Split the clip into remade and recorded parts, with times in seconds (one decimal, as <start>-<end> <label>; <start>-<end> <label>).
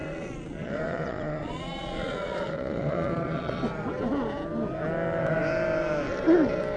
0.0-3.6 remade; 3.6-6.8 recorded